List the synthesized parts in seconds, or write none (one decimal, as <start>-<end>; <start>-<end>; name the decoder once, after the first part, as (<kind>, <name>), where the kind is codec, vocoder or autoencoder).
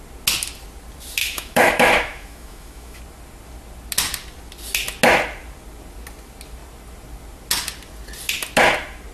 1.2-3.0 (autoencoder, DAC-VAE)